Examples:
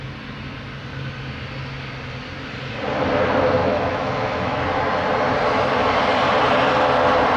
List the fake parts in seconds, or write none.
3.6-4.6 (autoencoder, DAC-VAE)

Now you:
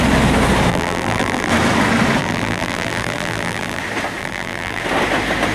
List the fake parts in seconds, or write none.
0.7-1.5 (vocoder, BigVGAN v2); 2.2-3.8; 4.2-4.8

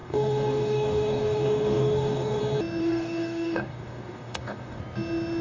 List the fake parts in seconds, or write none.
0.0-2.4 (codec, DAC); 2.8-4.8

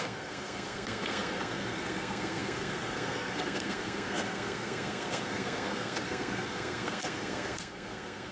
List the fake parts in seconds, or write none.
0.0-8.3 (codec, SNAC)